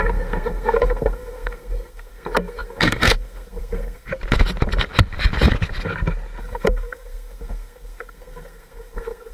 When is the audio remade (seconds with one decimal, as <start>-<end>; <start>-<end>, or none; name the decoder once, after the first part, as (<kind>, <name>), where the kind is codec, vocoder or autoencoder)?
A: 0.0-4.1 (codec, SNAC); 6.4-9.3